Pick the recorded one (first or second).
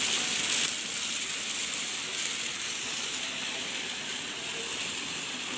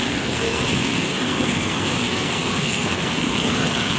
first